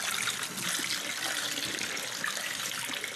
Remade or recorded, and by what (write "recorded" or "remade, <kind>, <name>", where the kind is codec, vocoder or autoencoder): recorded